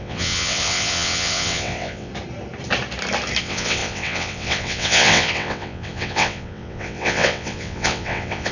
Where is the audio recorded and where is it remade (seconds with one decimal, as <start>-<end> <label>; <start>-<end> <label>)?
0.0-2.1 remade; 2.1-3.4 recorded; 3.4-8.5 remade